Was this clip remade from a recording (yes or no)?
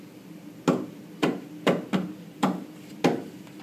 no